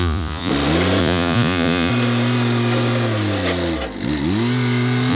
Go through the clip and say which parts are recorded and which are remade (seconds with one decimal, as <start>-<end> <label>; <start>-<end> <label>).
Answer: 0.0-0.5 remade; 0.5-1.0 recorded; 1.0-1.9 remade; 1.9-5.1 recorded